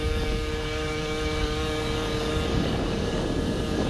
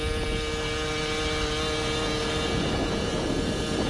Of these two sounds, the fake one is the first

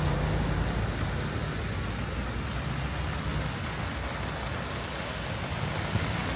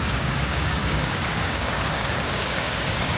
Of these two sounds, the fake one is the second